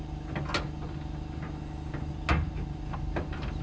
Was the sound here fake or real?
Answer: real